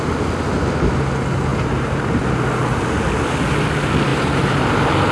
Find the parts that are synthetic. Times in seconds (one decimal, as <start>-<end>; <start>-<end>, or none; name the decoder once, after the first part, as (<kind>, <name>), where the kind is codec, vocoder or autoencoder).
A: 1.5-2.2 (vocoder, BigVGAN v2); 4.1-4.6